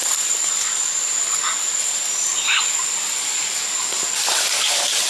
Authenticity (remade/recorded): recorded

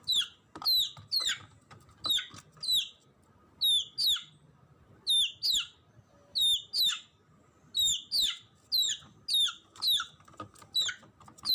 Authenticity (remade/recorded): recorded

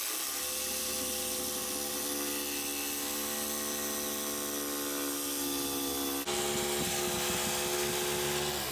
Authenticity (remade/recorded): recorded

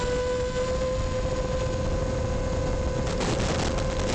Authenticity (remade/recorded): recorded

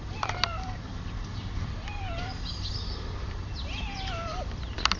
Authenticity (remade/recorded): remade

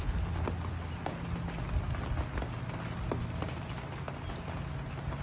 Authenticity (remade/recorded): recorded